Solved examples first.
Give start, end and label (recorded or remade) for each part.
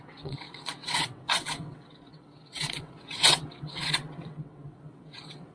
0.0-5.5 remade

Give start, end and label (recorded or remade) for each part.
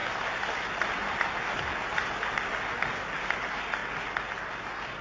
0.0-5.0 recorded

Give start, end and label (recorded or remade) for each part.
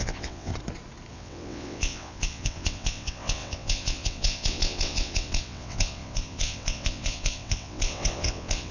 0.0-0.5 remade; 0.5-1.1 recorded; 1.1-8.7 remade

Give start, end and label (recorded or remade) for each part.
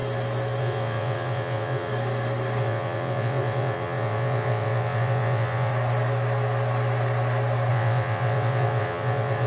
0.0-0.6 recorded; 0.6-1.9 remade; 1.9-2.6 recorded; 2.6-5.7 remade; 5.7-7.7 recorded; 7.7-9.5 remade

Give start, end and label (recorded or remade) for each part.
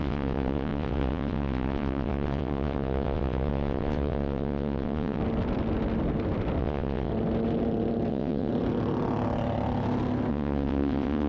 0.0-5.2 remade; 5.2-6.6 recorded; 6.6-7.1 remade; 7.1-8.1 recorded; 8.1-8.5 remade; 8.5-10.3 recorded; 10.3-11.3 remade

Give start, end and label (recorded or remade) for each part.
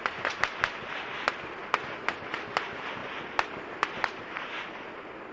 0.0-5.3 recorded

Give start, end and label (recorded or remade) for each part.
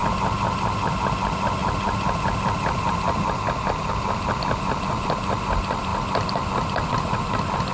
0.0-7.7 recorded